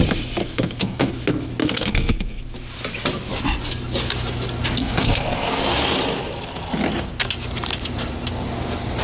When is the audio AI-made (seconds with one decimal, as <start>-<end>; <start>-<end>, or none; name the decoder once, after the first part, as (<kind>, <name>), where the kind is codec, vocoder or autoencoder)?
0.4-1.1 (codec, SNAC); 1.6-2.4; 4.8-5.6

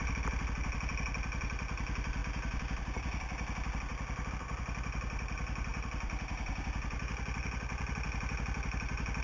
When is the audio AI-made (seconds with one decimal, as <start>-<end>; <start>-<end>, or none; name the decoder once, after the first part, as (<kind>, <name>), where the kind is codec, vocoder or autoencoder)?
none

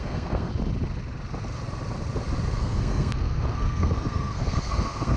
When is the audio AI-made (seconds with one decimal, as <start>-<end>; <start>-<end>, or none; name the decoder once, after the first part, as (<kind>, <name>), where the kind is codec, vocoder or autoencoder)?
0.0-0.5 (codec, SNAC); 2.6-5.2

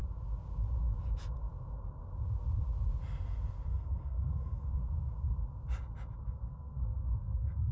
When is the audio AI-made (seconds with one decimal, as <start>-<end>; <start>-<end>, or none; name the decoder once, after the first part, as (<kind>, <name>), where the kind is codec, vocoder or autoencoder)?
3.7-4.7 (codec, SNAC); 6.2-7.7

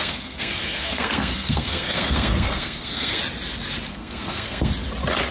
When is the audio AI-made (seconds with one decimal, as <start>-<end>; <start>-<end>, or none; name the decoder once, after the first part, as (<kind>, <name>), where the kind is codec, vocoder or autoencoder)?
0.0-3.2 (codec, SNAC); 3.9-4.7

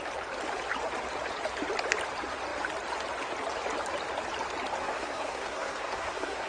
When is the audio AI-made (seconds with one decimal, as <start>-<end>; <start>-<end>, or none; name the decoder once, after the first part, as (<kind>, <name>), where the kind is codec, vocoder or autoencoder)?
4.8-6.5 (codec, SNAC)

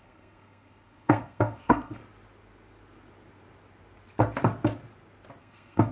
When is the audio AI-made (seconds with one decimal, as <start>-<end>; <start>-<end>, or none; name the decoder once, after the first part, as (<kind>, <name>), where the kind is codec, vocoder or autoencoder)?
0.0-2.0 (codec, SNAC); 5.4-5.9

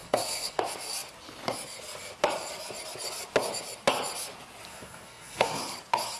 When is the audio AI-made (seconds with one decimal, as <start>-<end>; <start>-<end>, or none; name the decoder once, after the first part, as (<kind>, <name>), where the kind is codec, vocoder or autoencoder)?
0.0-0.6 (codec, SNAC); 4.7-5.6